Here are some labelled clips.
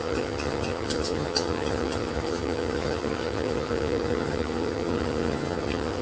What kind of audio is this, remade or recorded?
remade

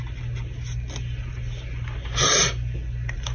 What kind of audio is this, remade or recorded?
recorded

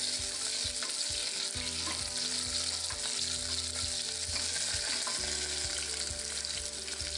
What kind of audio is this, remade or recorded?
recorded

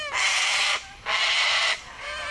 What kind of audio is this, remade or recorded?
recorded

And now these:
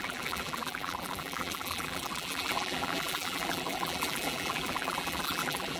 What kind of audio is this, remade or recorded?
remade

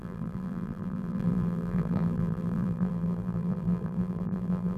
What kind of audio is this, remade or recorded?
remade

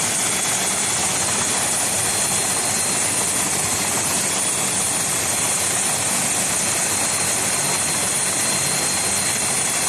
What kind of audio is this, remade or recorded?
recorded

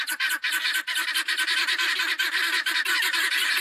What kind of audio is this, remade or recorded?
recorded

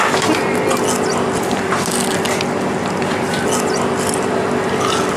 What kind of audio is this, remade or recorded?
recorded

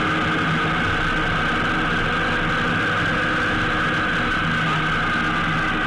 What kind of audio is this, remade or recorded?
recorded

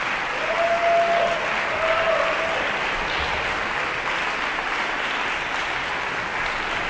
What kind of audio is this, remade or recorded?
recorded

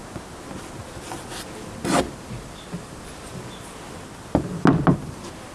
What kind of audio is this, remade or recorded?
recorded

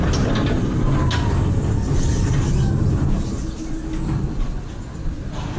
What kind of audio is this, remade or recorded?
recorded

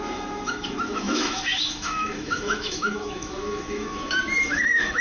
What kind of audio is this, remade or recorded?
remade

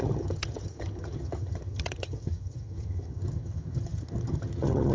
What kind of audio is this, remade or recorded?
remade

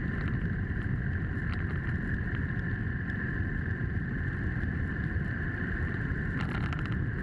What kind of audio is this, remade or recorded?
recorded